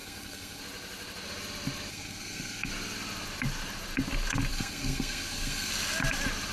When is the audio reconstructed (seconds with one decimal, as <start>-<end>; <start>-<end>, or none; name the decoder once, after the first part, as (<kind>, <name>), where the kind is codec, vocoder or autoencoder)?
0.0-0.6 (codec, SNAC); 1.9-2.7; 4.5-5.7